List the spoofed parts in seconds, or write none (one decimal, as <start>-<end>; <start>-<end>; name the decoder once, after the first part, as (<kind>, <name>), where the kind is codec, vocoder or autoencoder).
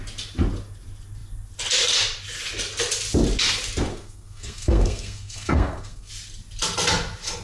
3.9-6.1 (codec, SNAC)